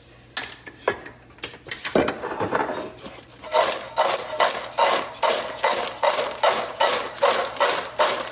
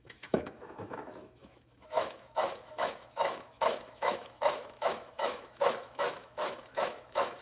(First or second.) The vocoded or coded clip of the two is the second